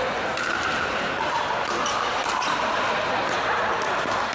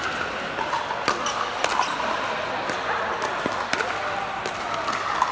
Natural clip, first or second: second